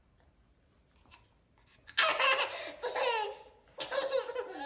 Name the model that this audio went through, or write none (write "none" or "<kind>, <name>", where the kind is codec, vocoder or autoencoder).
none